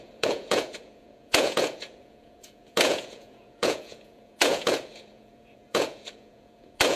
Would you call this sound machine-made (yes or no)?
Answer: yes